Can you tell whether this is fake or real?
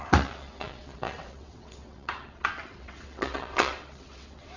fake